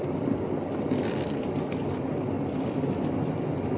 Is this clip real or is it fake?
real